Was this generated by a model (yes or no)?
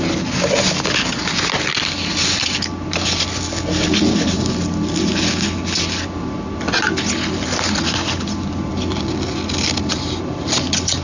no